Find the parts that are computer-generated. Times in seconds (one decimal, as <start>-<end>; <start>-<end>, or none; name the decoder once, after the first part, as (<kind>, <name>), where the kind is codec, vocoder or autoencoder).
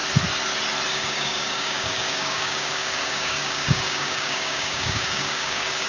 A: 0.9-5.9 (codec, DAC)